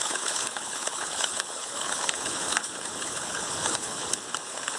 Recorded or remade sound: remade